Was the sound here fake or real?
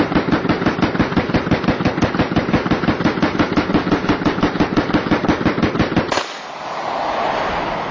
real